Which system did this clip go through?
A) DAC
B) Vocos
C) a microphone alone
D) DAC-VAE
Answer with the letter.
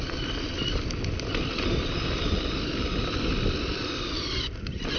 C